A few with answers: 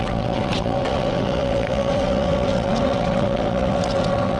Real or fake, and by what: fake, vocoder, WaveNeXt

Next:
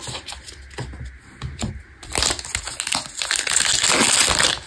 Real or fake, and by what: real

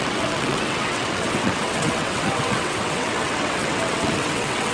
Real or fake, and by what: fake, vocoder, WaveNeXt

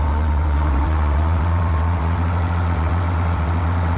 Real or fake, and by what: fake, vocoder, WaveNeXt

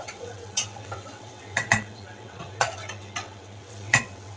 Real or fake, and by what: fake, vocoder, WaveNeXt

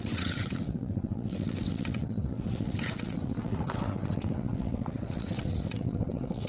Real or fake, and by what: fake, vocoder, WaveNeXt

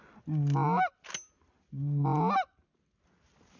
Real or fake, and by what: real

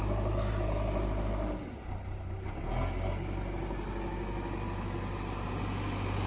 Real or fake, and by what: real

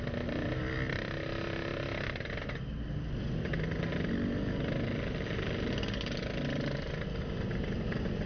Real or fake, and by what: real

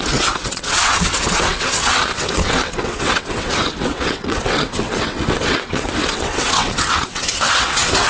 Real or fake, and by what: fake, vocoder, WaveNeXt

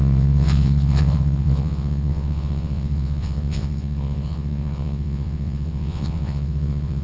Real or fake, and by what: fake, vocoder, WaveNeXt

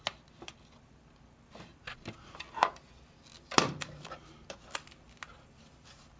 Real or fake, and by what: real